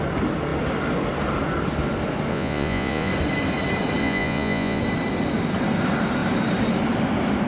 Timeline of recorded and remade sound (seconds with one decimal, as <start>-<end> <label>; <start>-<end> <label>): 0.0-2.3 recorded; 2.3-3.1 remade; 3.1-4.0 recorded; 4.0-4.8 remade; 4.8-7.5 recorded